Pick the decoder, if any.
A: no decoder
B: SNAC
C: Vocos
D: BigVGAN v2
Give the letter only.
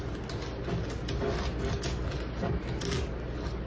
A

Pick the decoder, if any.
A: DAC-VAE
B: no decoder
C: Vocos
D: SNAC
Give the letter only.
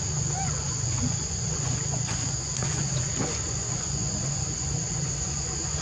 C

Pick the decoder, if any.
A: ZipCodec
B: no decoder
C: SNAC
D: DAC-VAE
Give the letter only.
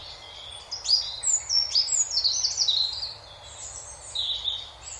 B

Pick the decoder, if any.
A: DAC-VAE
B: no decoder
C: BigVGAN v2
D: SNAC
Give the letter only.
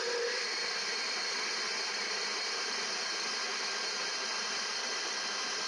B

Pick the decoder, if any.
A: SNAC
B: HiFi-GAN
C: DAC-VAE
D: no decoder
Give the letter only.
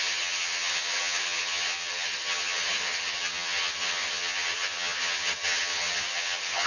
B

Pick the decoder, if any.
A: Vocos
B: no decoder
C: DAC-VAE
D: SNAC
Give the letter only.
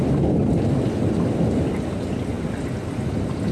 B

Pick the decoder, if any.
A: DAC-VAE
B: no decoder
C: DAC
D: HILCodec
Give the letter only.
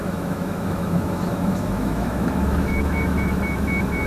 A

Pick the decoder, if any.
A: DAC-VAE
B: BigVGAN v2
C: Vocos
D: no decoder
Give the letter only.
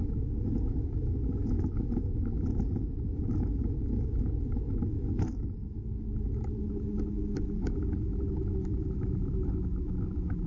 A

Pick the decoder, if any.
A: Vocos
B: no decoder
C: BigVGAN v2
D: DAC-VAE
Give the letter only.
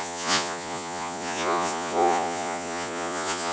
A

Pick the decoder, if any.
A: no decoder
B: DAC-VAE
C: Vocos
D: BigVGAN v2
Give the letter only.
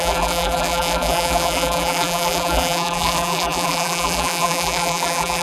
D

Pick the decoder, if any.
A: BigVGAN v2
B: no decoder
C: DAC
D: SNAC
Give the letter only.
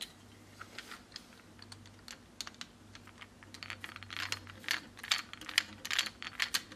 B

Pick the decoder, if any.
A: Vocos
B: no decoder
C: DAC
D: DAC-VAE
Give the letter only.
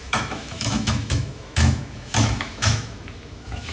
D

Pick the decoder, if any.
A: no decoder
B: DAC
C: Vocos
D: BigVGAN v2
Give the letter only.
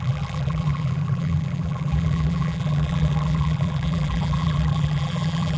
D